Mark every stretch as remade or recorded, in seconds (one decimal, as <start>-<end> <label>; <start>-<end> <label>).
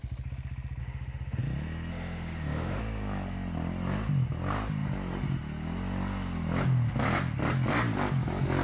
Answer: 0.0-0.8 recorded; 0.8-1.4 remade; 1.4-1.9 recorded; 1.9-2.8 remade; 2.8-8.6 recorded